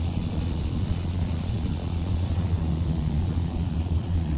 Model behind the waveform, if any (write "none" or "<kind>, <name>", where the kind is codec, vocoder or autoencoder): vocoder, Vocos